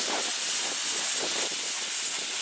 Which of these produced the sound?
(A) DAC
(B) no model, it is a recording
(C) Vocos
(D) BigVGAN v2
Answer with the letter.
B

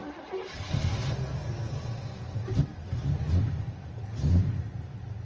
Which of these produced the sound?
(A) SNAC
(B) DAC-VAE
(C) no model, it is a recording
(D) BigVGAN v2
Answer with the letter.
C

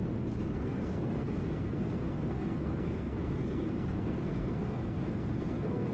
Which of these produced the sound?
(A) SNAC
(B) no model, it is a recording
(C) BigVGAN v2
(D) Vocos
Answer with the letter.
A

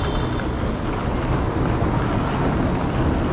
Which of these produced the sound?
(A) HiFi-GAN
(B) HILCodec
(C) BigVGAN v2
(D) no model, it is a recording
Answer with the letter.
D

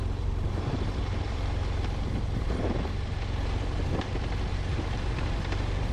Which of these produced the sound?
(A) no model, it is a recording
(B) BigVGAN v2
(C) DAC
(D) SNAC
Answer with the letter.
B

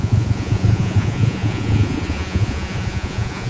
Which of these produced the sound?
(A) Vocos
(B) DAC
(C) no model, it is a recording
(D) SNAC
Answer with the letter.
A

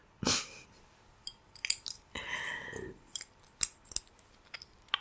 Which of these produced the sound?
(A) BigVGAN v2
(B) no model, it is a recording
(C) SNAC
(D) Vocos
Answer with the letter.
B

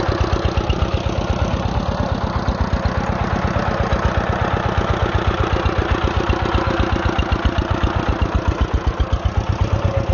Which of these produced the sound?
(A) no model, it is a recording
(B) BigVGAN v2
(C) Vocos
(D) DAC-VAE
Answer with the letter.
A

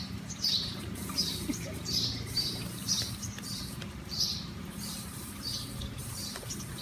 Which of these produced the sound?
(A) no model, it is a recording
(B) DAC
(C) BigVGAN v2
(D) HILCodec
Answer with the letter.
C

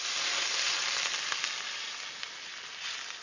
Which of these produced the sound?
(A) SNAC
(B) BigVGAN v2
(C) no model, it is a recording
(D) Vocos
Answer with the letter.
C